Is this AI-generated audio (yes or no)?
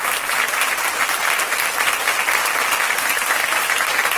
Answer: no